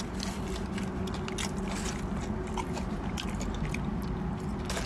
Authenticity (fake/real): real